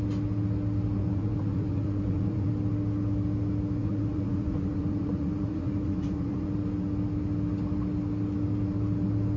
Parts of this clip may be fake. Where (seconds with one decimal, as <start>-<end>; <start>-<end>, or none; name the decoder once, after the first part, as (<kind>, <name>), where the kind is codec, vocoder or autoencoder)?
1.0-2.5 (vocoder, Vocos); 3.8-6.5